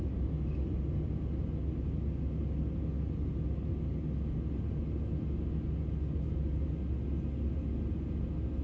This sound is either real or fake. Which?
real